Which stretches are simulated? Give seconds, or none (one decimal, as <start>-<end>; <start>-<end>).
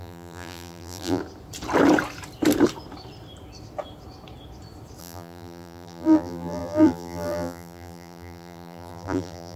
0.0-1.2; 5.0-9.6